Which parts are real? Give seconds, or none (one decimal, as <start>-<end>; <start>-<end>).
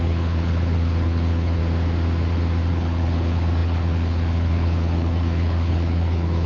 1.6-2.7